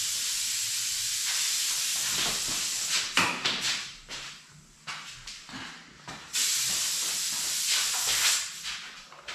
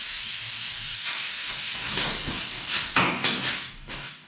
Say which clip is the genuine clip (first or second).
first